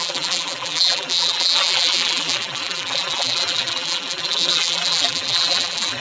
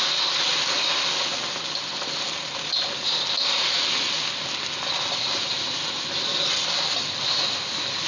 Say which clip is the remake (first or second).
first